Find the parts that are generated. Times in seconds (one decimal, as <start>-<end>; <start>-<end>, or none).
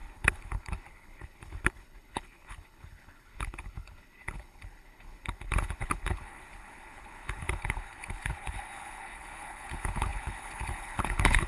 0.0-11.5